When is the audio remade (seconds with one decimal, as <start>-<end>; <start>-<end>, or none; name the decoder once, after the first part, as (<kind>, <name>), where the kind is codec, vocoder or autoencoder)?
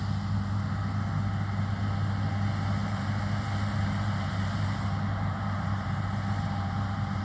2.8-7.2 (vocoder, BigVGAN v2)